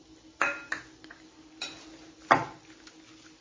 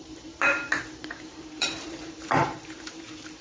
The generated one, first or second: second